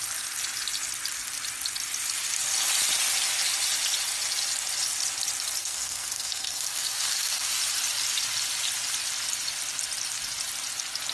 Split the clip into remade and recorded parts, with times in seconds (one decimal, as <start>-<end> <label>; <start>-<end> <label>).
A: 0.0-5.6 recorded; 5.6-7.6 remade; 7.6-11.1 recorded